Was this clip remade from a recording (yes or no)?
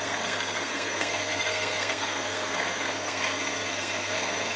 yes